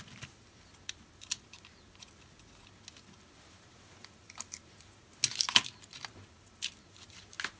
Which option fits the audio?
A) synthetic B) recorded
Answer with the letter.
B